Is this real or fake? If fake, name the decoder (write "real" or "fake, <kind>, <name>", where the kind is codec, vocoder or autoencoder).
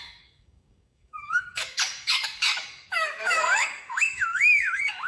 fake, codec, DAC